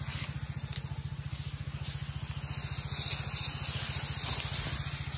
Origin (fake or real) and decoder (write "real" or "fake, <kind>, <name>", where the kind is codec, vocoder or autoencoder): real